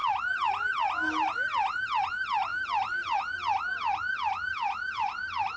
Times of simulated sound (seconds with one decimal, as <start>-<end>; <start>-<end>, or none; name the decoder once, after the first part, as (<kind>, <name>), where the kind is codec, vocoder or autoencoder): none